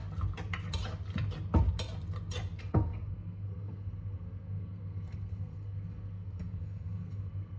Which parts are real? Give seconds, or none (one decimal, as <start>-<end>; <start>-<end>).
0.0-2.6